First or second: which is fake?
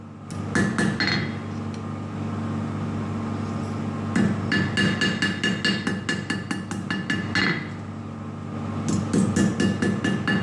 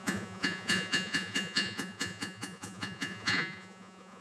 second